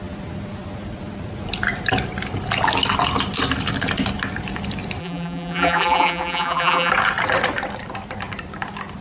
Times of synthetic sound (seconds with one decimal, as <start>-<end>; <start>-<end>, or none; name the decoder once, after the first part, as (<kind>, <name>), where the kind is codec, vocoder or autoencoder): 5.0-6.9 (vocoder, BigVGAN v2)